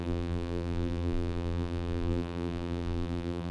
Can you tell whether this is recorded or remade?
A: remade